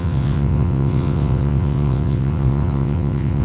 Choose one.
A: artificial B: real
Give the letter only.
A